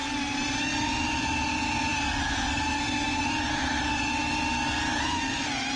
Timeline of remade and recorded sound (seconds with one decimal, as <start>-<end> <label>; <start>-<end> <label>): 0.0-5.8 recorded